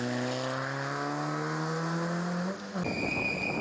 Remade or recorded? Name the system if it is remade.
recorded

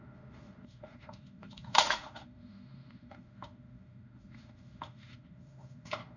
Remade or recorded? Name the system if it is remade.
remade, autoencoder, DAC-VAE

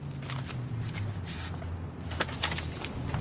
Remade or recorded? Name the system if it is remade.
recorded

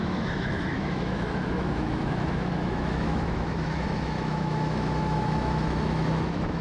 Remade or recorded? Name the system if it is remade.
remade, autoencoder, DAC-VAE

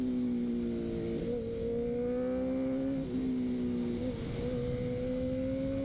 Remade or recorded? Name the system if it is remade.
recorded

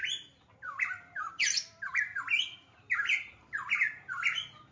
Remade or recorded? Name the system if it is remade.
recorded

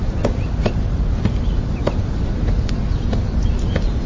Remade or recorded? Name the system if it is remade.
recorded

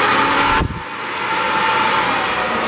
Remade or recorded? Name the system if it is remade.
recorded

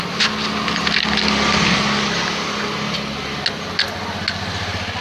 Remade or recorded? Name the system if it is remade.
recorded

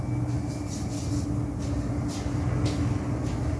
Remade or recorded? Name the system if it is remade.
recorded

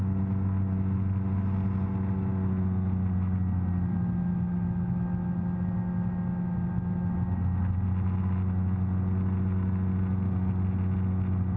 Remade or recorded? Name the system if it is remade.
recorded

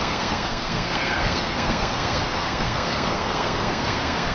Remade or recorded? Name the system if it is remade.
remade, codec, SNAC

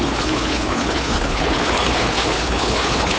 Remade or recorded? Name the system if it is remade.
remade, codec, HILCodec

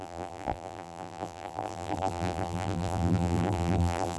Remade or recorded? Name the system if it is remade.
remade, vocoder, BigVGAN v2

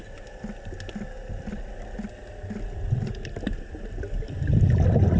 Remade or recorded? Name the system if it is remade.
recorded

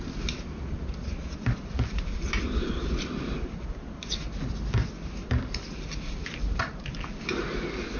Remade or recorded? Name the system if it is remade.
recorded